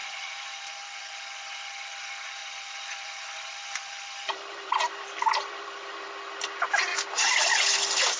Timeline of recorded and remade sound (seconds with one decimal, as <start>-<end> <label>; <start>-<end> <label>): 0.0-1.0 remade; 1.0-2.4 recorded; 2.4-6.1 remade; 6.1-8.2 recorded